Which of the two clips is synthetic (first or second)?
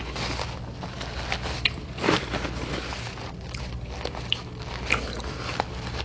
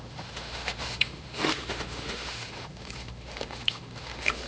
second